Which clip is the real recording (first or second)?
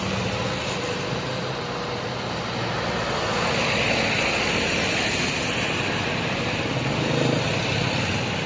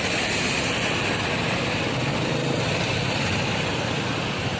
first